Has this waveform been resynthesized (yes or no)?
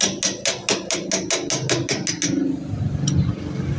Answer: no